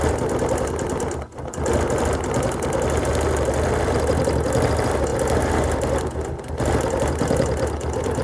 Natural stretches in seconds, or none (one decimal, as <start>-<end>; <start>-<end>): 0.0-8.2

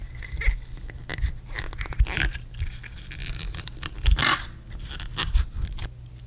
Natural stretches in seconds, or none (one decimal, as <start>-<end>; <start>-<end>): 0.0-3.2; 4.0-6.3